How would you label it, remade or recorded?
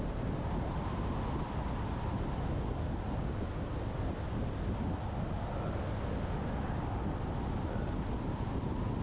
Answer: recorded